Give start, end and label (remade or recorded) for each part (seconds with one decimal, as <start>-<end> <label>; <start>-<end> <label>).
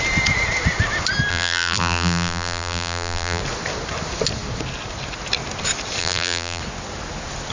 0.0-1.3 recorded; 1.3-3.4 remade; 3.4-6.0 recorded; 6.0-6.6 remade; 6.6-7.5 recorded